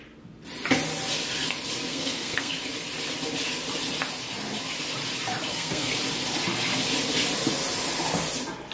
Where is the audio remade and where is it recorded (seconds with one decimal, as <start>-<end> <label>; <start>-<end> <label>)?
0.0-1.9 recorded; 1.9-2.5 remade; 2.5-5.5 recorded; 5.5-6.0 remade; 6.0-8.7 recorded